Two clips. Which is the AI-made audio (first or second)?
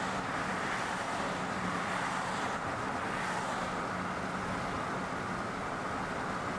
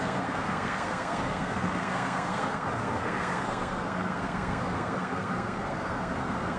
second